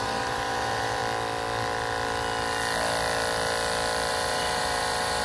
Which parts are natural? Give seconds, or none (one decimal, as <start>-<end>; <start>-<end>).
1.0-4.1